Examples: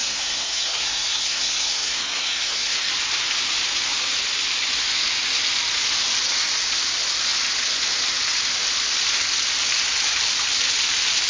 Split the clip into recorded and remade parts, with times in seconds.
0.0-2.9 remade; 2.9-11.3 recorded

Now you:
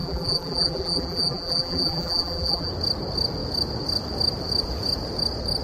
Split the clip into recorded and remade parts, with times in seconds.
0.0-2.7 remade; 2.7-5.6 recorded

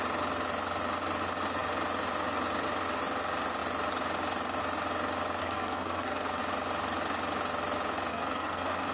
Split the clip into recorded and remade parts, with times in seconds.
0.0-5.4 recorded; 5.4-6.4 remade; 6.4-8.1 recorded; 8.1-8.9 remade

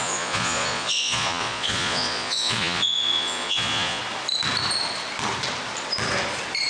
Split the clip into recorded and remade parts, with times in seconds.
0.0-4.0 remade; 4.0-6.7 recorded

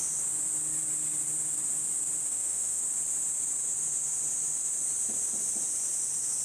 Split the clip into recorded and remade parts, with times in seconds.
0.0-2.3 recorded; 2.3-2.8 remade; 2.8-6.4 recorded